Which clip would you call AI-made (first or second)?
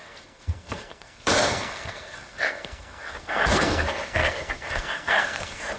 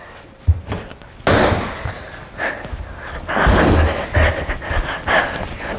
first